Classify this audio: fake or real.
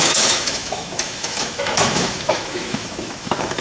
fake